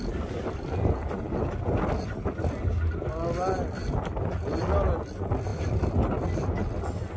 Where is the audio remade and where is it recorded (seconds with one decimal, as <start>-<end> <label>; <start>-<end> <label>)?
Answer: 0.0-7.2 recorded

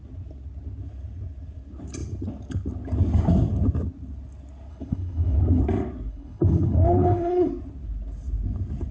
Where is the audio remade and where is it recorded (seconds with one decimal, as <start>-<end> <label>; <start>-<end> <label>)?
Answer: 0.0-4.7 recorded; 4.7-5.6 remade; 5.6-6.1 recorded; 6.1-7.5 remade; 7.5-8.9 recorded

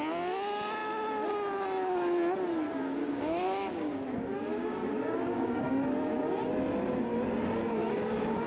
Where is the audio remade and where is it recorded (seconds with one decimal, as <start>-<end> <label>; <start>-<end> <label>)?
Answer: 0.0-3.0 recorded; 3.0-5.7 remade; 5.7-7.8 recorded; 7.8-8.5 remade

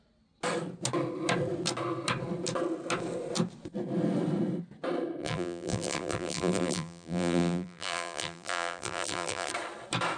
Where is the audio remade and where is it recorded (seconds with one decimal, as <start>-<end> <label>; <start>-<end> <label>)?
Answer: 0.0-5.2 recorded; 5.2-9.5 remade; 9.5-10.2 recorded